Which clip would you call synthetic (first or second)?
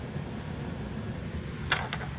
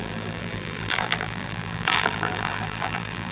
second